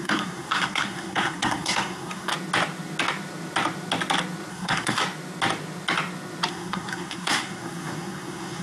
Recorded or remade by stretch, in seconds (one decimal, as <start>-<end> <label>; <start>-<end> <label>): 0.0-2.3 remade; 2.3-4.5 recorded; 4.5-5.0 remade; 5.0-6.5 recorded; 6.5-8.6 remade